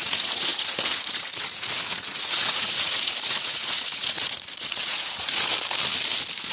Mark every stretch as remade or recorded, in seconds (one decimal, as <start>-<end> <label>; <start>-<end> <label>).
0.0-5.5 remade; 5.5-6.5 recorded